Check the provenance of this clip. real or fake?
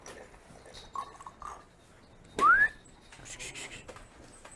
real